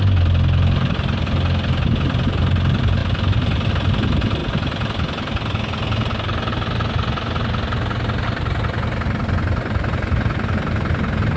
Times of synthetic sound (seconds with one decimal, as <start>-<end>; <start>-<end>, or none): none